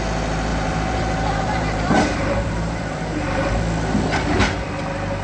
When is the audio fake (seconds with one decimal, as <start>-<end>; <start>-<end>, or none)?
0.5-3.5